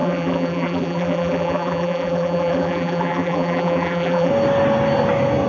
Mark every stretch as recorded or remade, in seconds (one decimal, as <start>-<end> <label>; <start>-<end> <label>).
0.0-4.3 remade; 4.3-5.5 recorded